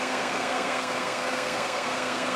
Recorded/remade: remade